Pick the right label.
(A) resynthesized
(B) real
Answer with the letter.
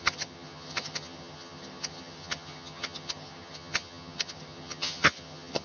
A